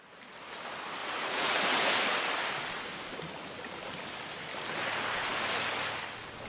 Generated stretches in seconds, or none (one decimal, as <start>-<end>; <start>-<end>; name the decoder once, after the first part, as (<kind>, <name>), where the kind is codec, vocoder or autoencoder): 1.0-1.6 (vocoder, Vocos)